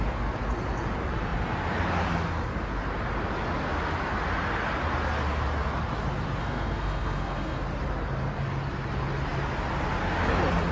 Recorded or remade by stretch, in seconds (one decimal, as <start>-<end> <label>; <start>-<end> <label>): 0.0-6.4 recorded; 6.4-7.6 remade; 7.6-10.7 recorded

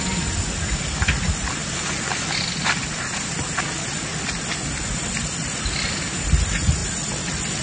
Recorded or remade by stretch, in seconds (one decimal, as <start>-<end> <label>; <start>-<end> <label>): 0.0-7.6 recorded